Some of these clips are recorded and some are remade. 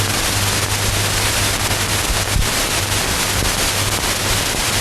recorded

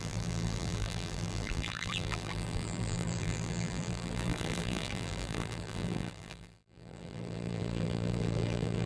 remade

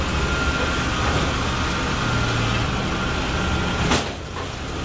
recorded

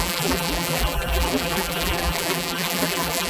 remade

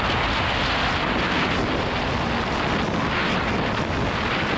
recorded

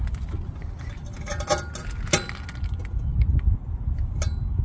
recorded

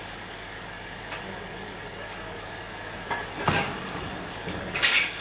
remade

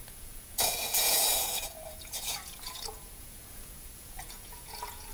remade